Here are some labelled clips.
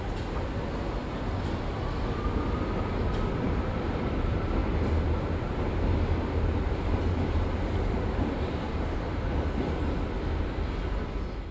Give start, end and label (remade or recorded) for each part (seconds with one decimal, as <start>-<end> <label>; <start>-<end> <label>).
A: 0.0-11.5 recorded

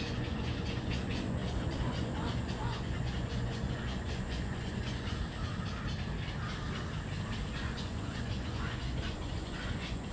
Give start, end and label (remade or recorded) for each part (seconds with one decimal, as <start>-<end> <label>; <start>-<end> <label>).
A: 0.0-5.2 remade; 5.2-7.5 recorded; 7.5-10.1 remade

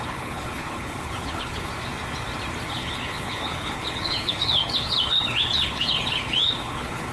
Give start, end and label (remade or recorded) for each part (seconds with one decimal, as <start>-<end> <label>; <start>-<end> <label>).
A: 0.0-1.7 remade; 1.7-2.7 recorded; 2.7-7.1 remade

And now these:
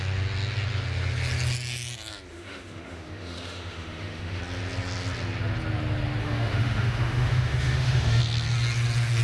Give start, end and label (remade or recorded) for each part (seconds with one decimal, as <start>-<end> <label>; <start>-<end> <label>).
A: 0.0-2.3 recorded; 2.3-4.4 remade; 4.4-6.2 recorded; 6.2-8.2 remade; 8.2-9.2 recorded